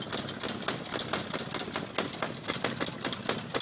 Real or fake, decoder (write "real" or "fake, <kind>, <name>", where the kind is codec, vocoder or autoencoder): real